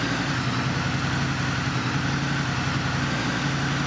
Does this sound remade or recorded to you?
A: recorded